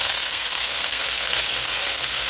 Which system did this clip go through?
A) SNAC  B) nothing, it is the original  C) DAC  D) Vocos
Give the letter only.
A